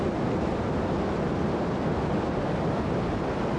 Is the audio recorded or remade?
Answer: recorded